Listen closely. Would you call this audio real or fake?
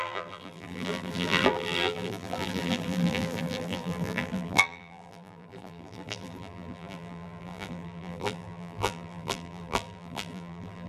fake